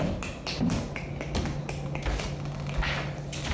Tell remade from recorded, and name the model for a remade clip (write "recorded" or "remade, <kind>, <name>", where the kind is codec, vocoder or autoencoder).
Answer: recorded